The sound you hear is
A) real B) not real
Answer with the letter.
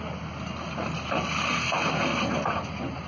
A